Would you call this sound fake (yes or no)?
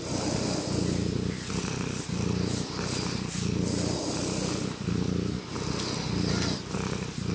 no